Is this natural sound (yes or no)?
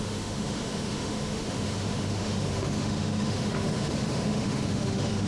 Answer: no